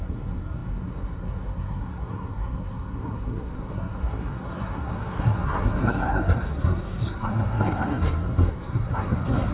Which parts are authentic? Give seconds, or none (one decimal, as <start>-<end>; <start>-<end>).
none